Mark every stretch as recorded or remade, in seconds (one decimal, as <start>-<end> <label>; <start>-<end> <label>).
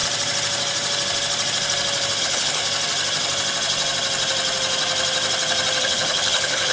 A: 0.0-2.2 recorded; 2.2-2.6 remade; 2.6-5.8 recorded; 5.8-6.7 remade